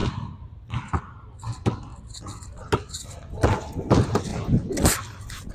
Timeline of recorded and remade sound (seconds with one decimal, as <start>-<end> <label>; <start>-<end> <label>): 0.0-5.5 recorded